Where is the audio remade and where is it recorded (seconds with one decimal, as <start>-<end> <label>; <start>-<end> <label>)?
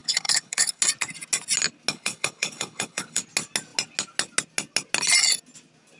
0.0-0.8 remade; 0.8-1.9 recorded; 1.9-3.2 remade; 3.2-6.0 recorded